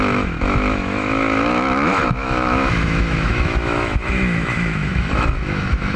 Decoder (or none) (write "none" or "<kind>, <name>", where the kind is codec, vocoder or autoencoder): autoencoder, DAC-VAE